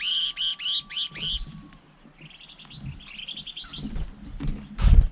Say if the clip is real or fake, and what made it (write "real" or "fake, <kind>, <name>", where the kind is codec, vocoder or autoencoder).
real